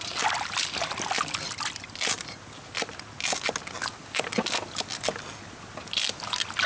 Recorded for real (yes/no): yes